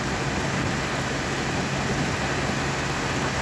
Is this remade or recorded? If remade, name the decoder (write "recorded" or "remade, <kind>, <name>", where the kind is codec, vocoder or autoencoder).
recorded